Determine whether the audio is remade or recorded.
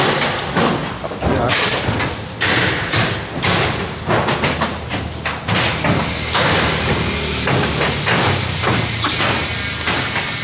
recorded